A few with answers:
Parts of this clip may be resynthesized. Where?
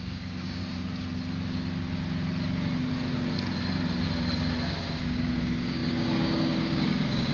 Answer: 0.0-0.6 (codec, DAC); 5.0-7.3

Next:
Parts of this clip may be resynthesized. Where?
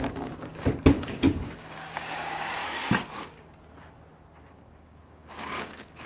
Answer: 0.0-2.6 (codec, DAC); 4.5-6.1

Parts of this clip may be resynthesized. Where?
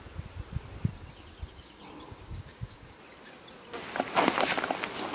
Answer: 0.9-3.0 (codec, DAC)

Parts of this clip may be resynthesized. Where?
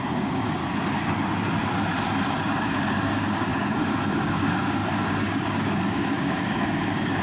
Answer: 0.0-0.6 (codec, DAC); 2.4-7.2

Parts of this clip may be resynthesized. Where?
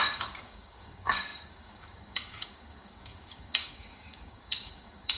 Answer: 0.0-5.2 (codec, DAC)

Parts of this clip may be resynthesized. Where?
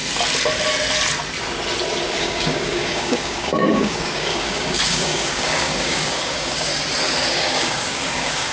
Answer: 2.2-6.7 (codec, DAC); 7.3-8.5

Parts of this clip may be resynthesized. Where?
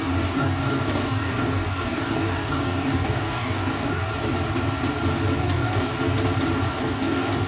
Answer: 0.0-4.1 (codec, DAC); 5.4-5.9; 6.8-7.5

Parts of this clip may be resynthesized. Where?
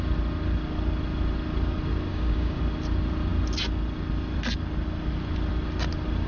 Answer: 2.1-2.6 (codec, DAC)